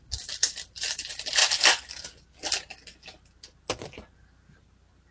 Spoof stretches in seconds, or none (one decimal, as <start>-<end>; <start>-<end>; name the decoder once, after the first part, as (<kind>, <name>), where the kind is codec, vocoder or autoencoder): none